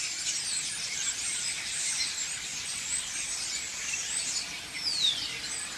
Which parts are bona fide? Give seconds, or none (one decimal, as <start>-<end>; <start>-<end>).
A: 0.0-2.5; 3.1-5.8